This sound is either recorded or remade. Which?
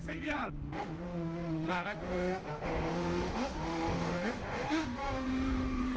remade